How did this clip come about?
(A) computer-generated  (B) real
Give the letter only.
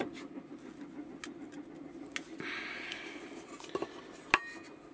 B